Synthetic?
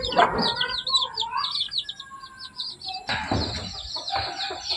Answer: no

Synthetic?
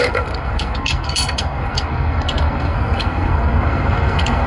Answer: yes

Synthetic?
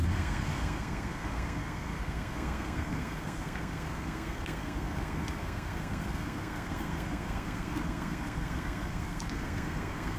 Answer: yes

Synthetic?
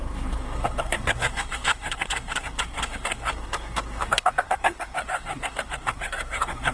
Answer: yes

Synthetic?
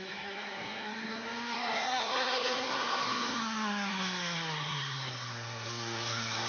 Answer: yes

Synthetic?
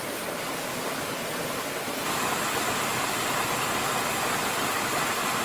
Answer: no